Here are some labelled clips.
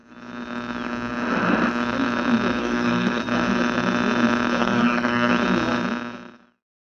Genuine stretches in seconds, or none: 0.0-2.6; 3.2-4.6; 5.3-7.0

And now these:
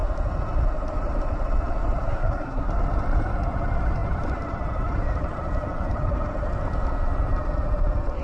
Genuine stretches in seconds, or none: 0.0-2.0; 2.7-8.2

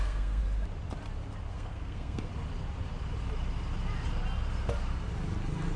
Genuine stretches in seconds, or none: 0.4-1.5; 2.3-5.8

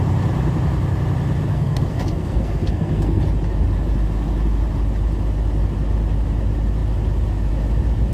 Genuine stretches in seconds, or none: 0.0-1.5; 3.2-8.1

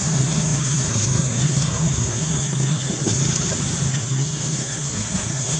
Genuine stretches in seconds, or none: 3.2-3.9